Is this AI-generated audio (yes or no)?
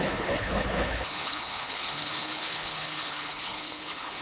yes